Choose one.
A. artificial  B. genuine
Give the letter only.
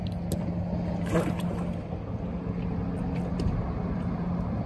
B